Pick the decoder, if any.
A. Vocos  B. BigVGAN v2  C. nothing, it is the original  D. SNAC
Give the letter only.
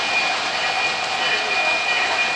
C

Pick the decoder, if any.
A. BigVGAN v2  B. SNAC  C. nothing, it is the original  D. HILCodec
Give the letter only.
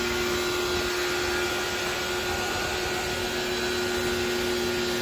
C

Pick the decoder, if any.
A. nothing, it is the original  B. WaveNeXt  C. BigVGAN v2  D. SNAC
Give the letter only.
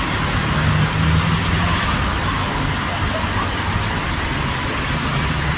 A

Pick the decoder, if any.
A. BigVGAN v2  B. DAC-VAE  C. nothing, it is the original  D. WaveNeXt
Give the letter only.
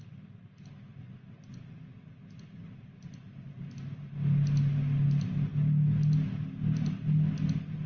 C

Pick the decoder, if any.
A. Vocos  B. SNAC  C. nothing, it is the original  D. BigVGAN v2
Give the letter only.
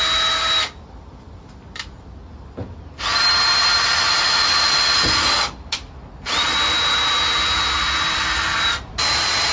C